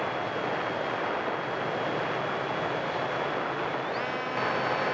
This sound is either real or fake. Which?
real